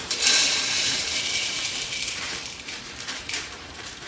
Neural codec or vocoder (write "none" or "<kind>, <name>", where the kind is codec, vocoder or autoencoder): vocoder, BigVGAN v2